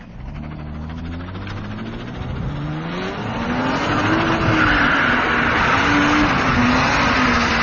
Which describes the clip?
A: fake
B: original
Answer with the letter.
B